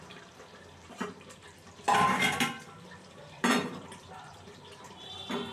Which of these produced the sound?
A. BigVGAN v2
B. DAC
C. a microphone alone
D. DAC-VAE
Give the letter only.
A